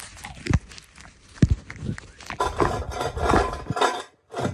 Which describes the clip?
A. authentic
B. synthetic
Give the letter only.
A